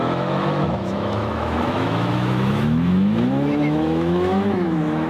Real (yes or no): no